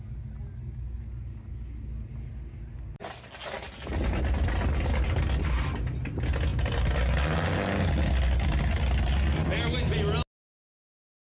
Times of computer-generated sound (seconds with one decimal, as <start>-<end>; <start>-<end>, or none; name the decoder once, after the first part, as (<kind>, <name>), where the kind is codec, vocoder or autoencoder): none